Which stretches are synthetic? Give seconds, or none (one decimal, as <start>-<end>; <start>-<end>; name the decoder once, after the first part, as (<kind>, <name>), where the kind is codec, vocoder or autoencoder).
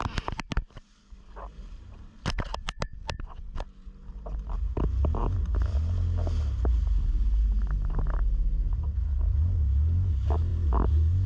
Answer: none